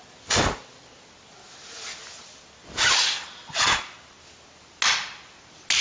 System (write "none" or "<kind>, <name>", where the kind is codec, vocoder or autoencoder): none